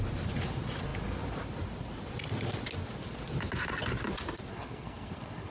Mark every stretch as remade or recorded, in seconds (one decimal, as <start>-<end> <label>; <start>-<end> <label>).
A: 0.0-4.5 recorded; 4.5-5.5 remade